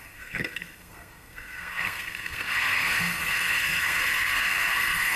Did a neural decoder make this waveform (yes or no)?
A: yes